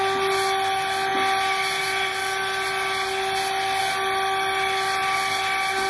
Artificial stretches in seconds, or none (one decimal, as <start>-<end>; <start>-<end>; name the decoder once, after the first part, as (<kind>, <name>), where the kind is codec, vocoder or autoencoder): none